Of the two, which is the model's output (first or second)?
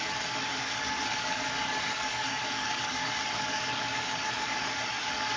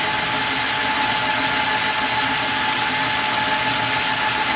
first